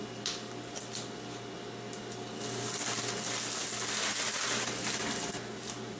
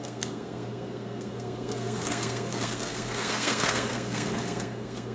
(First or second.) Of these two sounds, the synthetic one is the second